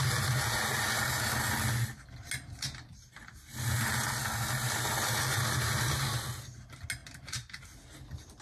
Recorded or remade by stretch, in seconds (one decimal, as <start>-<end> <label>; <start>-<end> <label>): 0.0-8.4 recorded